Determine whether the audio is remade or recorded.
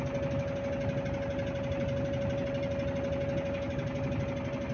recorded